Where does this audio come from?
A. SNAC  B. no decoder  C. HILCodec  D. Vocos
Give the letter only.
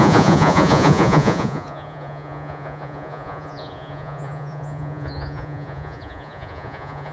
D